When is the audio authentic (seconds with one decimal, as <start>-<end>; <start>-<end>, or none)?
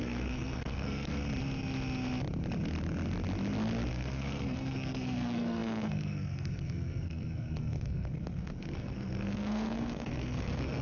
1.1-3.9